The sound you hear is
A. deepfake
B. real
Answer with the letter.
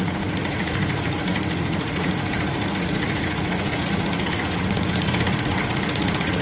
A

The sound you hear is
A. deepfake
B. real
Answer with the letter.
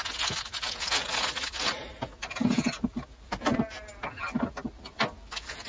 B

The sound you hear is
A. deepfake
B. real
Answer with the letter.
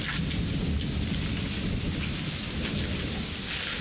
B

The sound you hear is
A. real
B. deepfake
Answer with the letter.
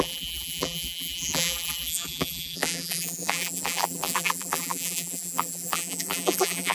B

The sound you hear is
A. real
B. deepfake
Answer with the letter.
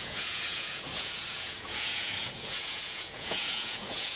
B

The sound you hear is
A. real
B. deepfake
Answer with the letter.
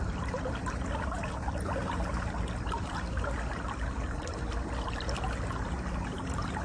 A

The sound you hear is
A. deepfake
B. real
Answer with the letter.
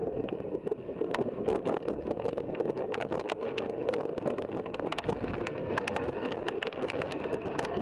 A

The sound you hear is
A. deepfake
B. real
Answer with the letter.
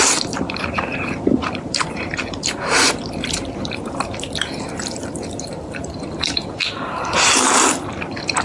A